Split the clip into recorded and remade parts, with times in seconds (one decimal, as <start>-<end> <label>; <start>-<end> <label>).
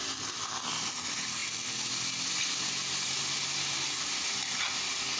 0.0-5.2 recorded